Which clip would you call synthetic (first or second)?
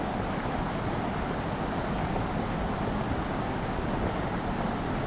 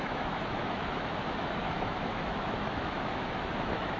second